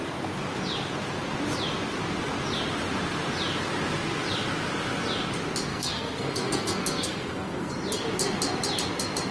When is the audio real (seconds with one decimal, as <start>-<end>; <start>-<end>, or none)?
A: 0.0-5.7; 7.7-9.3